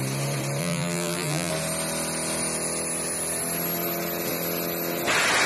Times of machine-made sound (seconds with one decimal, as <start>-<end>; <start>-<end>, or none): 0.6-1.5